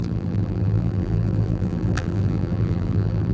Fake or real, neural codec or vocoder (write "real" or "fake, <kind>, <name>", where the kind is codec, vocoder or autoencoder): fake, vocoder, BigVGAN v2